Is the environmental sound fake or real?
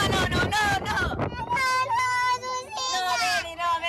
real